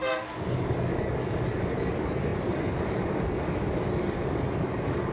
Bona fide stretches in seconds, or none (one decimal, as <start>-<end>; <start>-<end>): none